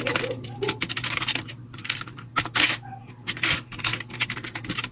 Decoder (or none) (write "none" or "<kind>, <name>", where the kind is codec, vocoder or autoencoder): none